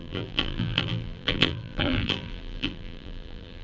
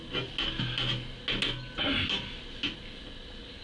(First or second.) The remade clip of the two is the first